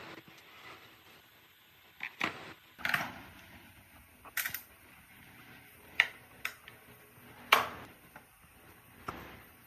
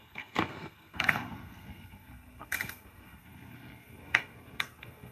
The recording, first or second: first